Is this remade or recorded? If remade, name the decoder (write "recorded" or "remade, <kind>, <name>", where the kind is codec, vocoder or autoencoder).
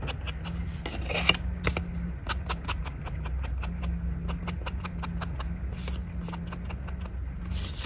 recorded